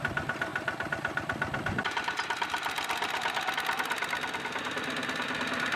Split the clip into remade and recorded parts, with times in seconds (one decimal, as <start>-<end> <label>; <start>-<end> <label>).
0.0-0.5 recorded; 0.5-3.5 remade; 3.5-5.8 recorded